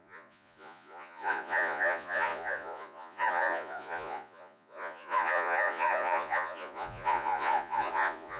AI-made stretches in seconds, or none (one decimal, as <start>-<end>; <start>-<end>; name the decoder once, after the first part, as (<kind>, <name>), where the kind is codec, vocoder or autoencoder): 0.0-8.4 (vocoder, Vocos)